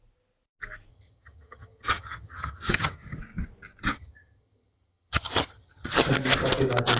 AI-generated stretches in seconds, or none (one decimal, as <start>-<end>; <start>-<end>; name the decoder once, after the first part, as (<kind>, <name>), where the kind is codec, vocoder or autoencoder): 0.9-3.2 (vocoder, HiFi-GAN); 3.9-6.1